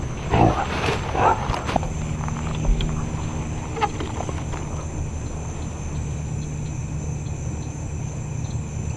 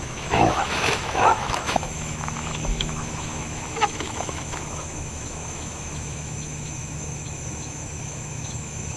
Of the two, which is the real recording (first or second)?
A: first